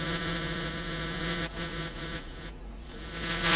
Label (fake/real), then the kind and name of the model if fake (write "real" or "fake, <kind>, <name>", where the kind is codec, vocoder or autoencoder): fake, vocoder, Vocos